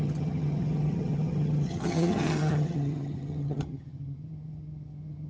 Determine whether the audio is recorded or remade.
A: remade